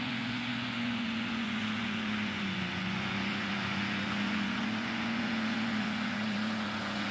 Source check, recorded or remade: remade